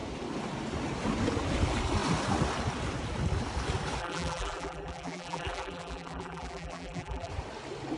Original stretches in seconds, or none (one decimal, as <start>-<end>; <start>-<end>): 0.0-4.0; 7.3-8.0